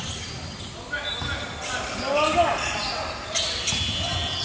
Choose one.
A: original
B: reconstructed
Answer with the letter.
A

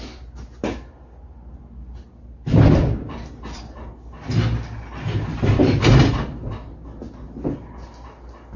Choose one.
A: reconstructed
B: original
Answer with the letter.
B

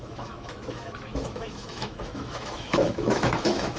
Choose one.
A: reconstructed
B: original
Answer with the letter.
A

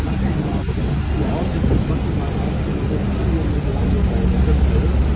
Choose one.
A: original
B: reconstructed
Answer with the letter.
A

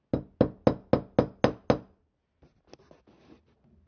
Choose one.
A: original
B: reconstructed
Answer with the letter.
A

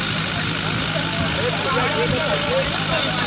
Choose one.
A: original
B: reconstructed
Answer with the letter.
A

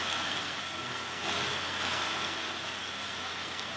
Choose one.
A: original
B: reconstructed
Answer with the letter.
B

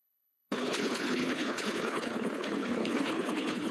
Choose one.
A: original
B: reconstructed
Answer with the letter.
B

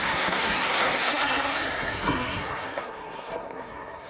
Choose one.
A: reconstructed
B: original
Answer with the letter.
A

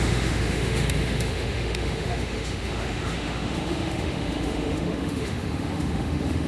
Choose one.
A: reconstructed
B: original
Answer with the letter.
A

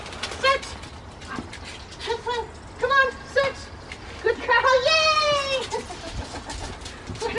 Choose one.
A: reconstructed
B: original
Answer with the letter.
B